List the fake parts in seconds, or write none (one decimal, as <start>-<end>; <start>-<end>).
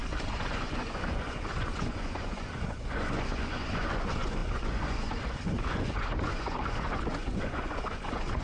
0.0-8.4